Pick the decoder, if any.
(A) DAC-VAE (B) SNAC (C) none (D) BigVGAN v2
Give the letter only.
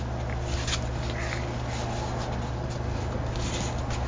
C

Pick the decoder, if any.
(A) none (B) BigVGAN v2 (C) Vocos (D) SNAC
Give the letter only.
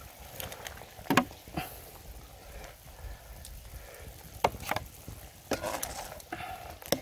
A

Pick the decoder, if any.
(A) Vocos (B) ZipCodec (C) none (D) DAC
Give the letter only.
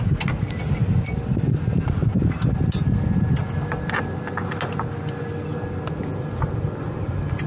C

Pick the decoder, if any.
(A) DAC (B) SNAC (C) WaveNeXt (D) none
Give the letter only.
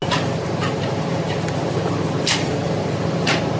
D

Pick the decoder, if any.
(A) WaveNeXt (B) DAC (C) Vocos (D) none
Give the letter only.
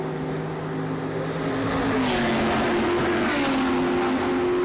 D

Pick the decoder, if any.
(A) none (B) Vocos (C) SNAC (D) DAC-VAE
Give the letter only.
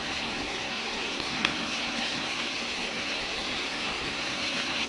C